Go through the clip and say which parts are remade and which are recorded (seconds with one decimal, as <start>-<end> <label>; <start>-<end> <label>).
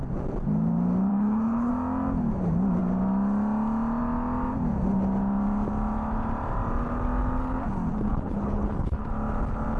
0.0-1.1 recorded; 1.1-1.7 remade; 1.7-8.1 recorded; 8.1-9.1 remade; 9.1-9.8 recorded